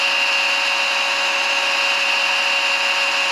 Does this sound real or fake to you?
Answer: real